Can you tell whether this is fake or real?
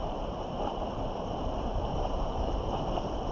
fake